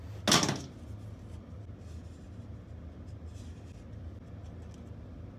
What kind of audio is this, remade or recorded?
recorded